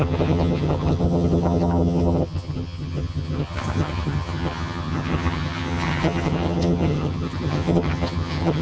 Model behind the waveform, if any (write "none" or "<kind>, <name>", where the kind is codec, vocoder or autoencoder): vocoder, HiFi-GAN